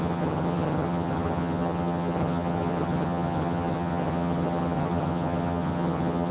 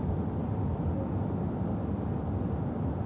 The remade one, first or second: first